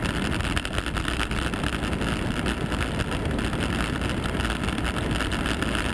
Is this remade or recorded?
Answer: recorded